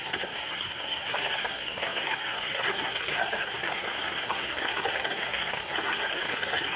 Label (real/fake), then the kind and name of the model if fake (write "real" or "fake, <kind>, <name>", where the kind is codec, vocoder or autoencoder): fake, codec, SNAC